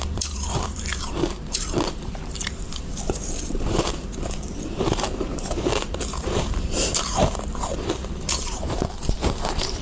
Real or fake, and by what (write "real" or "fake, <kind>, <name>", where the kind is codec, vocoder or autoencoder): fake, vocoder, BigVGAN v2